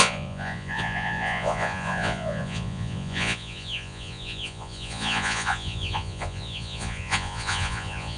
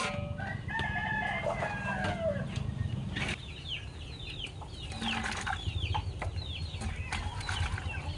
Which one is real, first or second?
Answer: second